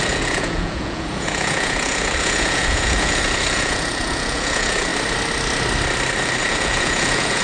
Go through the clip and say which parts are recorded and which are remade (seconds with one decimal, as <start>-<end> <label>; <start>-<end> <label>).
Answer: 0.0-4.9 remade; 4.9-6.4 recorded; 6.4-7.4 remade